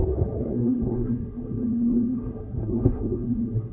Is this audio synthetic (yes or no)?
yes